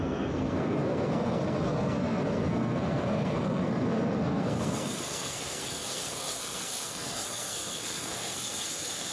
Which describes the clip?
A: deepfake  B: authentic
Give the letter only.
A